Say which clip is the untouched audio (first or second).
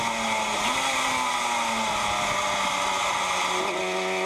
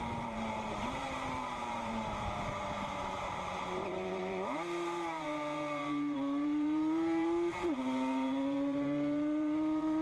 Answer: first